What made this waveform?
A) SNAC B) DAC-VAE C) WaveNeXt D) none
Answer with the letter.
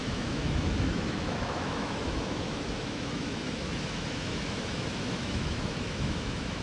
B